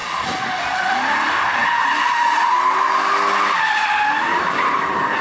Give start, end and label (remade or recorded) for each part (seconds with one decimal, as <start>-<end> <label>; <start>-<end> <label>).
0.0-5.2 recorded

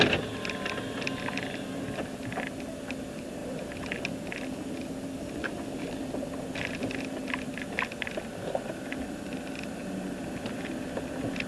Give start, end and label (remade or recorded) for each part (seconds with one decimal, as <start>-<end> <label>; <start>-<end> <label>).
0.0-11.5 recorded

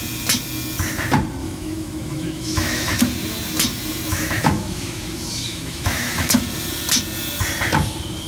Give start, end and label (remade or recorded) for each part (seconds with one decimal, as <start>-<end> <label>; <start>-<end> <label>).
0.0-1.4 recorded; 1.4-3.0 remade; 3.0-4.1 recorded; 4.1-6.4 remade; 6.4-8.3 recorded

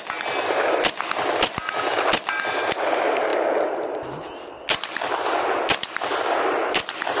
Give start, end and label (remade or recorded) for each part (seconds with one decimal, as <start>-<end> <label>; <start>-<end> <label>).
0.0-7.2 recorded

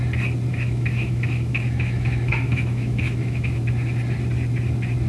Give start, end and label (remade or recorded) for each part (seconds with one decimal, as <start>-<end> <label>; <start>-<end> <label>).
0.0-0.5 recorded; 0.5-3.6 remade; 3.6-5.1 recorded

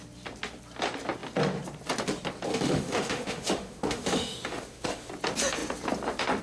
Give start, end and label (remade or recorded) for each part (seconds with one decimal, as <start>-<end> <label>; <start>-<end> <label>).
0.0-2.5 recorded; 2.5-5.1 remade; 5.1-6.4 recorded

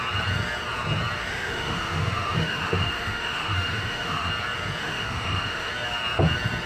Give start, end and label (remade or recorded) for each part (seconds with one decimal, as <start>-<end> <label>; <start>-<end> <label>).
0.0-1.3 recorded; 1.3-4.3 remade; 4.3-4.8 recorded; 4.8-5.7 remade; 5.7-6.7 recorded

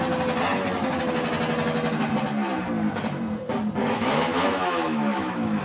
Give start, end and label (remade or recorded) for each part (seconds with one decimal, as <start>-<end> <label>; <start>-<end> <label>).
0.0-3.8 recorded; 3.8-5.6 remade